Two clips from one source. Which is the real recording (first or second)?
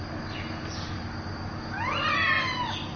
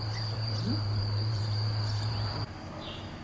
first